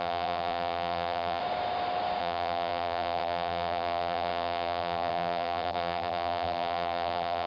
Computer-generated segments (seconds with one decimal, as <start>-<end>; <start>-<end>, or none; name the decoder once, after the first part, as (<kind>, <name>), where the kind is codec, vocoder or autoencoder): 0.0-1.4 (vocoder, BigVGAN v2); 2.2-7.5